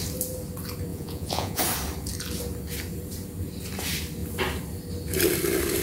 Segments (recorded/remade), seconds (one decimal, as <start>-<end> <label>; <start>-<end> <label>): 0.0-0.9 recorded; 0.9-1.6 remade; 1.6-5.8 recorded

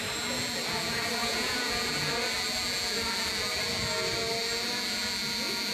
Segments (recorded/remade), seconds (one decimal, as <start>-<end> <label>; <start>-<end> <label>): 0.0-1.2 recorded; 1.2-1.7 remade; 1.7-5.7 recorded

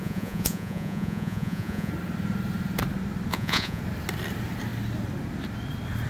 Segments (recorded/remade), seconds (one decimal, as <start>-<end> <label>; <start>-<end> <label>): 0.0-1.9 remade; 1.9-3.3 recorded; 3.3-3.8 remade; 3.8-6.1 recorded

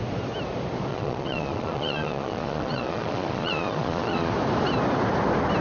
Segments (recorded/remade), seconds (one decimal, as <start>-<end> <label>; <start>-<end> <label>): 0.0-0.9 recorded; 0.9-4.3 remade; 4.3-5.6 recorded

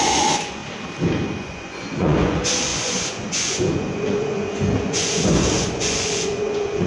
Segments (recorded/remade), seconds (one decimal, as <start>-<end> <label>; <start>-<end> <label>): 0.0-0.6 remade; 0.6-1.4 recorded; 1.4-6.9 remade

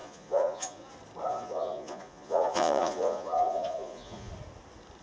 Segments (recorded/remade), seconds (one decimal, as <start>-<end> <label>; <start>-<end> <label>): 0.0-0.9 remade; 0.9-1.3 recorded; 1.3-4.3 remade; 4.3-5.0 recorded